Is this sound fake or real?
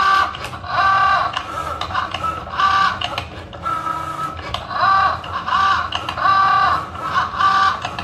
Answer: real